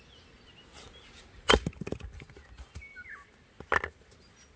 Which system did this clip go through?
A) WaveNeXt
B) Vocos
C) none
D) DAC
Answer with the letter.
C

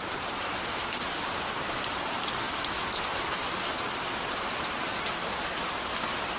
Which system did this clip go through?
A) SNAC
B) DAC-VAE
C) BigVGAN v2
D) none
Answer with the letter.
D